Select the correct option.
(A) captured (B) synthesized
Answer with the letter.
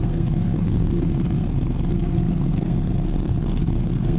B